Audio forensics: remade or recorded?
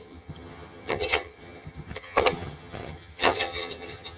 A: remade